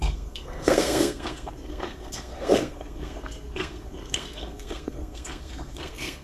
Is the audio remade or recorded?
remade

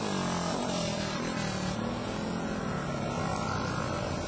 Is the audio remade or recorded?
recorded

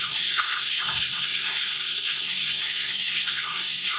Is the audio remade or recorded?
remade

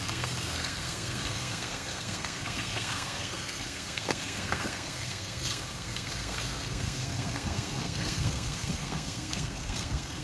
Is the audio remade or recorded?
remade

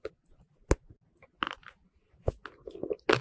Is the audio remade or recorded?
recorded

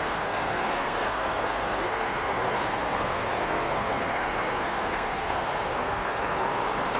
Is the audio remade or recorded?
remade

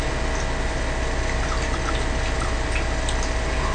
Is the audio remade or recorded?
recorded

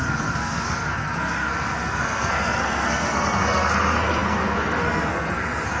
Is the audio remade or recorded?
remade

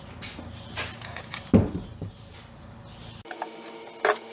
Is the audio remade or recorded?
recorded